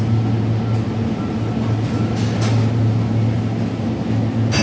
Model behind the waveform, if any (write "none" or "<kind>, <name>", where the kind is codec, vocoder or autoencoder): none